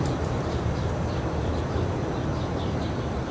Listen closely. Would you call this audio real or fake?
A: fake